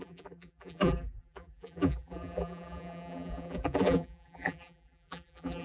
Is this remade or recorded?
remade